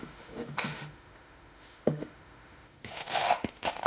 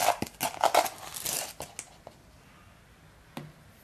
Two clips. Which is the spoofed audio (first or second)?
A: first